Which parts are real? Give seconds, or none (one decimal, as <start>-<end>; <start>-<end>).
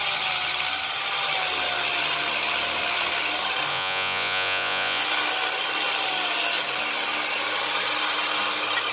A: 0.0-3.7; 5.0-8.9